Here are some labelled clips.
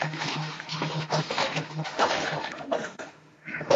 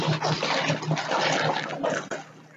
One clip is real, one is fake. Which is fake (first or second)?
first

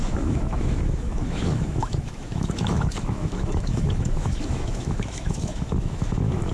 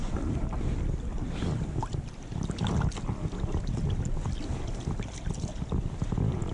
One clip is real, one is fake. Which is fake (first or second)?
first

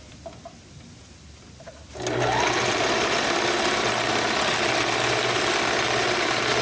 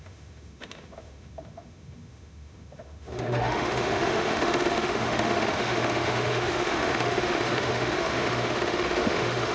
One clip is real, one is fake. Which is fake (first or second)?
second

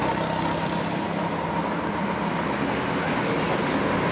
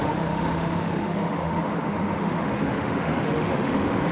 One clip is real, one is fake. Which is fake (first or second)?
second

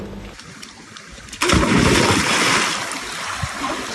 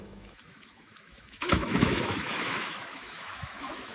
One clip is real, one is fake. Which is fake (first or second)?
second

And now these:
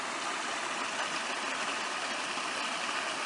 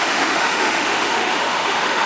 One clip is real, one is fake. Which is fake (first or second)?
second